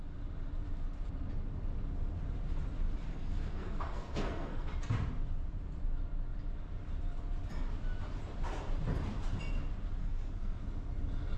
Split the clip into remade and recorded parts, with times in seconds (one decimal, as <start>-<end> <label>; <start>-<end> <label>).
0.0-3.1 recorded; 3.1-4.7 remade; 4.7-10.0 recorded; 10.0-10.6 remade; 10.6-11.4 recorded